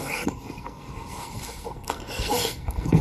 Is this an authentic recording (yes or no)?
no